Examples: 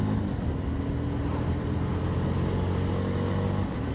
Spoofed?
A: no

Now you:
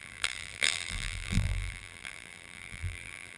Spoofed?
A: yes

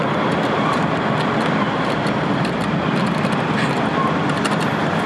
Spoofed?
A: no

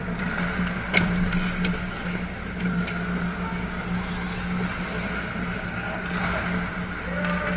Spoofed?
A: no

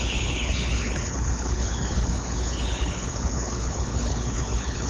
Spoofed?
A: yes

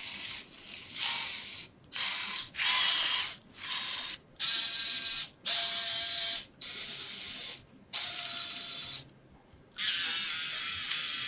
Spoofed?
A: no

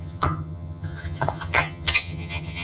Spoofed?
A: yes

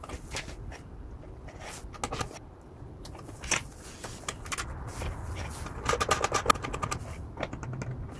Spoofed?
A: no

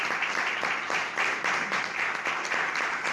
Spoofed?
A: no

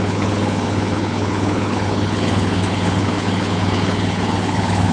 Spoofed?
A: yes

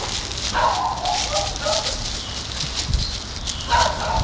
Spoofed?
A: no